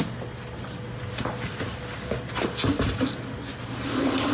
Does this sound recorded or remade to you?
recorded